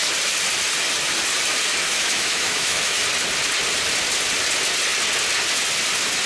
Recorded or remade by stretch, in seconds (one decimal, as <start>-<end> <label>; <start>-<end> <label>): 0.0-1.8 recorded; 1.8-3.0 remade; 3.0-6.3 recorded